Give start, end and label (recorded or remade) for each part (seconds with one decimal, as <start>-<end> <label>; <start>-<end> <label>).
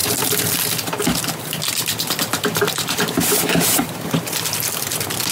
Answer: 0.0-5.3 recorded